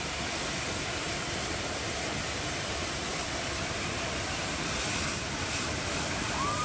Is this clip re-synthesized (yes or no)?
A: no